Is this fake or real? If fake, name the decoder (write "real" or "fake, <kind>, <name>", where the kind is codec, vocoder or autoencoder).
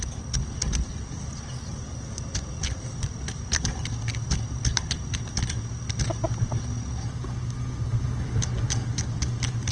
real